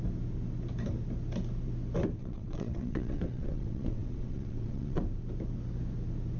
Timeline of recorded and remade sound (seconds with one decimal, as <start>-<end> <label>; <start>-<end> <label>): 0.0-2.2 recorded; 2.2-5.0 remade; 5.0-6.4 recorded